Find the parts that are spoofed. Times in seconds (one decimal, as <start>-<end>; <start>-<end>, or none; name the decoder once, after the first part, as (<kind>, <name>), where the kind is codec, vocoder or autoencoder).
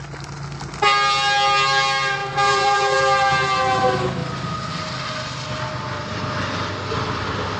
2.2-3.0 (vocoder, Vocos)